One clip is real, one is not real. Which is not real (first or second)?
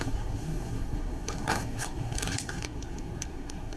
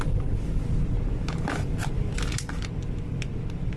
first